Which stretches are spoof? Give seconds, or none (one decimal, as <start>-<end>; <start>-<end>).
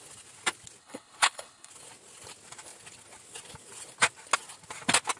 0.8-1.7